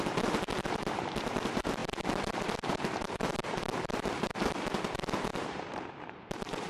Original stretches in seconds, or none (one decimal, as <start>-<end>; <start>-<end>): 0.0-5.3